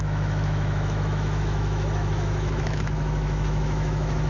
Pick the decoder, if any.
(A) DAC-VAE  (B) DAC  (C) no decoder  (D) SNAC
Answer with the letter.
A